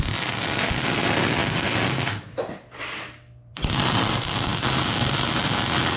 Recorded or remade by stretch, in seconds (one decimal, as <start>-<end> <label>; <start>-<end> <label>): 0.0-1.4 remade; 1.4-2.8 recorded; 2.8-4.5 remade; 4.5-6.0 recorded

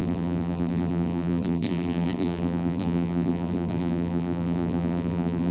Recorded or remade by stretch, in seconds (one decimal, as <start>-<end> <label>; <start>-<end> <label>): 0.0-5.5 remade